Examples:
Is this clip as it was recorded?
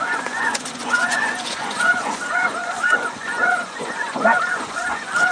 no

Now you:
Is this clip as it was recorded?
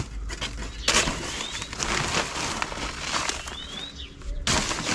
yes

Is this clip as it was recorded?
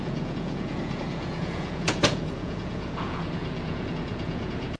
no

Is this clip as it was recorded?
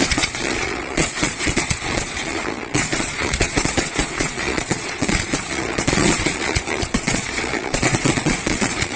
no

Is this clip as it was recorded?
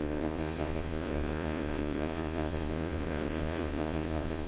no